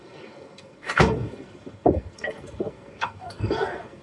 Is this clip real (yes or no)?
no